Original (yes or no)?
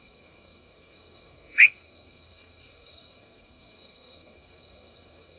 no